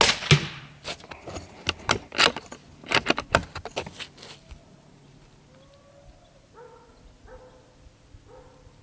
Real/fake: real